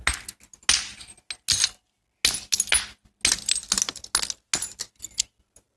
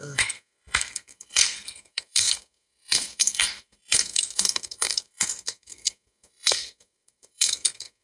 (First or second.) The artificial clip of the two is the second